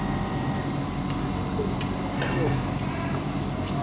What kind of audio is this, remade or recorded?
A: recorded